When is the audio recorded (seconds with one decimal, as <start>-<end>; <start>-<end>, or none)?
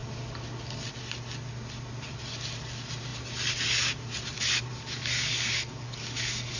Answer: 0.0-4.7